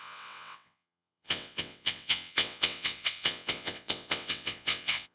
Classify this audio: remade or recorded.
remade